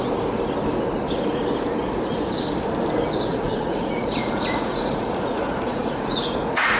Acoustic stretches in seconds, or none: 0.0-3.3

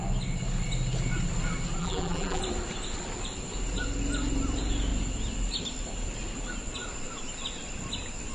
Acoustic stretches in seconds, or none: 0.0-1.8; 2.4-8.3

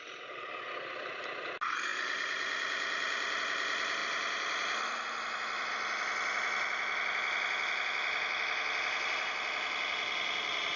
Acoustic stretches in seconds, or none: 0.0-10.8